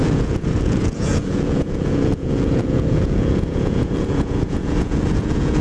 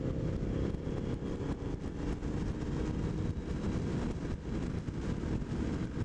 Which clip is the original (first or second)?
second